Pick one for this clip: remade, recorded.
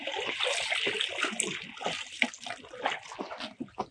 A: recorded